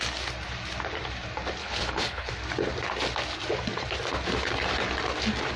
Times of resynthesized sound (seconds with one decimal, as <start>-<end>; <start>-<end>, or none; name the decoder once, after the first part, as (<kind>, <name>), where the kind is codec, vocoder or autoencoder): 1.6-2.3 (codec, HILCodec)